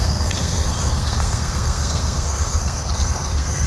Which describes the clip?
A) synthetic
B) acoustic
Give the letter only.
A